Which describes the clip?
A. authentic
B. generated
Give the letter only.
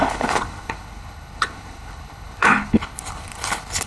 B